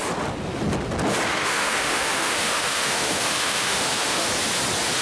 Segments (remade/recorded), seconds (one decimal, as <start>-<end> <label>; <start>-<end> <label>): 0.0-1.3 recorded; 1.3-4.3 remade; 4.3-5.0 recorded